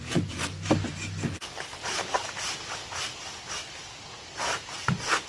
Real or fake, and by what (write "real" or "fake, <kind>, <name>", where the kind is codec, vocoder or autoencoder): real